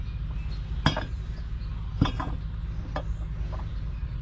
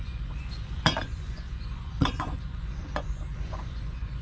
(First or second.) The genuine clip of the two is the first